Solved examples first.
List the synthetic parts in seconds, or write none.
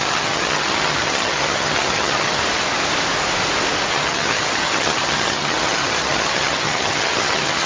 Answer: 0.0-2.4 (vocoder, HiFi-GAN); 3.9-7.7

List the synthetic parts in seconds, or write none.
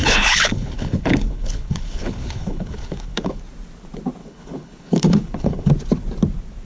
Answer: 0.0-3.4 (codec, HILCodec); 4.2-5.7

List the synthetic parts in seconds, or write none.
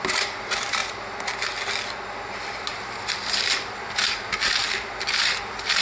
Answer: 0.0-0.8 (vocoder, BigVGAN v2); 2.3-4.6; 5.2-5.8